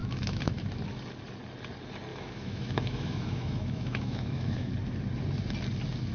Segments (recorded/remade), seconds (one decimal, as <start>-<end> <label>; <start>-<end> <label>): 0.0-0.6 remade; 0.6-2.1 recorded; 2.1-4.7 remade; 4.7-6.1 recorded